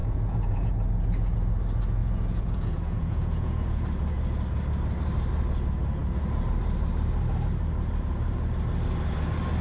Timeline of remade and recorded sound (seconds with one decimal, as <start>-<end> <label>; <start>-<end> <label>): 0.0-0.7 remade; 0.7-2.0 recorded; 2.0-3.8 remade; 3.8-9.6 recorded